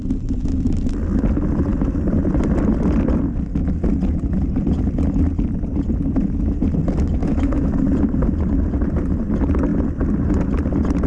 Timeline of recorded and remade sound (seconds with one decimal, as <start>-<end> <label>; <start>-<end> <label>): 0.0-7.2 recorded; 7.2-7.7 remade; 7.7-11.1 recorded